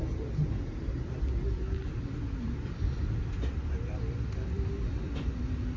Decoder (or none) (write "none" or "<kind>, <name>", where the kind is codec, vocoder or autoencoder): none